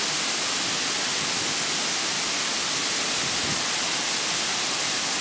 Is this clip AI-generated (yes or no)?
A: no